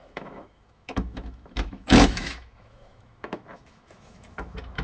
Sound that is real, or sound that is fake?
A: fake